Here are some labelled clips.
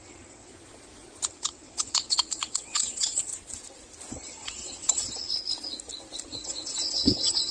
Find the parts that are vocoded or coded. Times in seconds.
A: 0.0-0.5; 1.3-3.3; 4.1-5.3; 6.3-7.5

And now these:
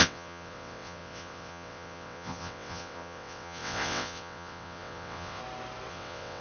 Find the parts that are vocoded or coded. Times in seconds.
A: 0.0-5.4; 5.9-6.4

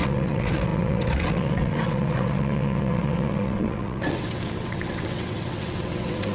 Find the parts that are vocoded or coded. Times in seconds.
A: 0.0-6.3

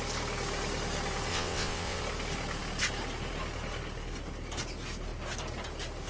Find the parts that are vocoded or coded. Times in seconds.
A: 1.3-2.0

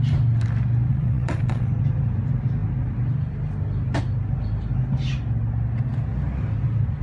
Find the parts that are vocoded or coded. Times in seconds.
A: 0.9-1.7

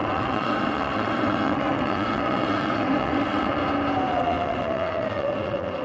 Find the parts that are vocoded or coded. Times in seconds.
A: 0.0-3.6; 4.1-5.8

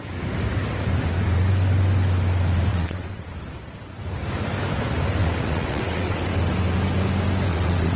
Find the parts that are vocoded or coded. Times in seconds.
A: 2.7-3.3; 5.2-6.2; 7.5-8.0

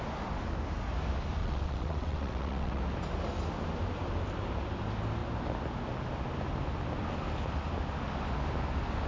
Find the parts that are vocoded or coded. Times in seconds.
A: 1.4-2.8